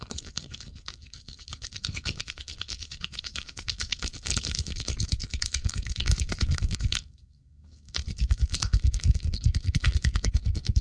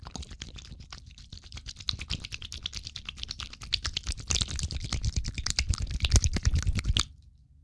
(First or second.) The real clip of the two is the second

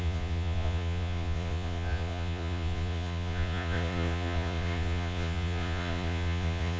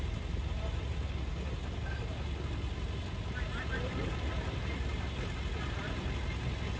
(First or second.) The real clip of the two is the second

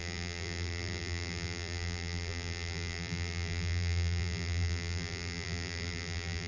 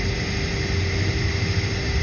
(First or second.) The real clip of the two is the second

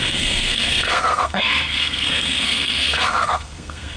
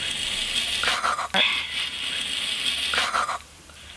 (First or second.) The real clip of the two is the second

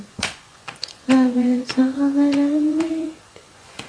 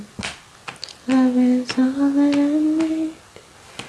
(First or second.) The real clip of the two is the second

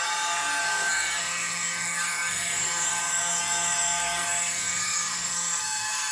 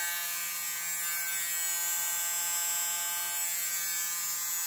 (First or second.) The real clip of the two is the second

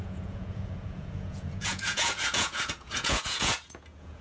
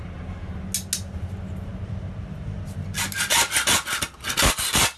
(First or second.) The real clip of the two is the second